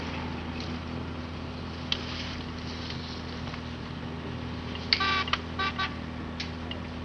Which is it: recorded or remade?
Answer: recorded